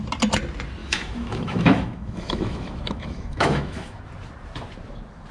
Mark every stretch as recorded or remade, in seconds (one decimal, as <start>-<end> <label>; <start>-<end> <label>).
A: 0.0-0.8 recorded; 0.8-4.0 remade; 4.0-5.3 recorded